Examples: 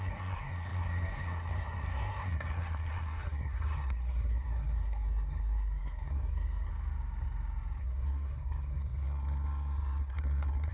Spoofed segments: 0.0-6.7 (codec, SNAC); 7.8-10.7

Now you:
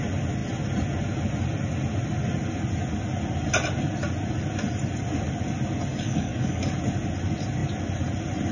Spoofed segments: 5.9-6.7 (codec, DAC)

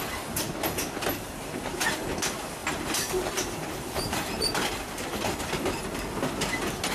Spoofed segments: 2.6-5.4 (vocoder, BigVGAN v2)